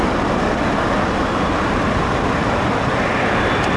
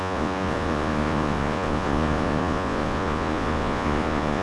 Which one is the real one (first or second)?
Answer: first